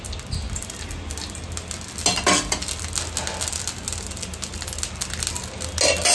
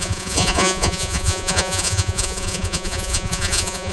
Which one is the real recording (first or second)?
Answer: first